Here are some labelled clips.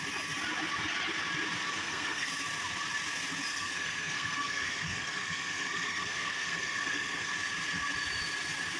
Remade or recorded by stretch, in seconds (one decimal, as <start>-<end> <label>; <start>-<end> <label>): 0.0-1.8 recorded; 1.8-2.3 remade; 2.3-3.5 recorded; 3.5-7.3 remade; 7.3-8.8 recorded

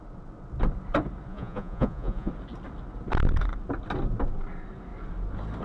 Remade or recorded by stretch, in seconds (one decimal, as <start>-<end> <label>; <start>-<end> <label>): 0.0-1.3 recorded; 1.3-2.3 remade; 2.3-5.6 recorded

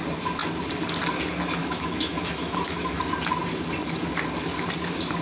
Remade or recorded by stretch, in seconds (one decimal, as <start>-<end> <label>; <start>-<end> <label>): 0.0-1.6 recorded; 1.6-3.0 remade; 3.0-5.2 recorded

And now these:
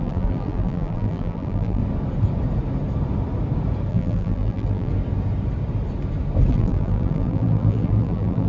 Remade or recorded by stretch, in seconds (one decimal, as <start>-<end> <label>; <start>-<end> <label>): 0.0-1.8 remade; 1.8-3.9 recorded; 3.9-4.9 remade; 4.9-6.5 recorded; 6.5-8.5 remade

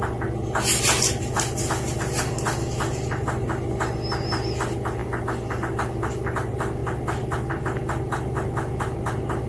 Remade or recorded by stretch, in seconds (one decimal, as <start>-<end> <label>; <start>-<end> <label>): 0.0-9.5 recorded

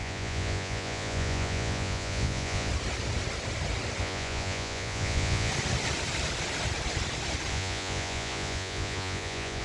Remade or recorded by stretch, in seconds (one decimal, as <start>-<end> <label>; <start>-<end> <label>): 0.0-2.7 remade; 2.7-4.0 recorded; 4.0-5.5 remade; 5.5-7.5 recorded; 7.5-9.6 remade